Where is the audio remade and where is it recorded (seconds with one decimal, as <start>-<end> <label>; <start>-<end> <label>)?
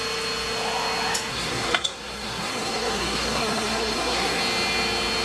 0.0-1.3 recorded; 1.3-4.4 remade; 4.4-5.2 recorded